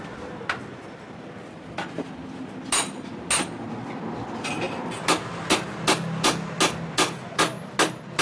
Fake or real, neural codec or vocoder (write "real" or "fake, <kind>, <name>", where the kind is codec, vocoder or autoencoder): real